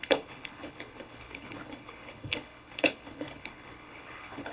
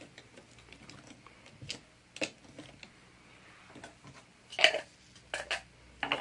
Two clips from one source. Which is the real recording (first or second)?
second